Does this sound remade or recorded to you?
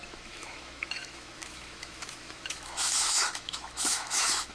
remade